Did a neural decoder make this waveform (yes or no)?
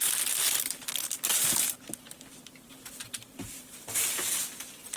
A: no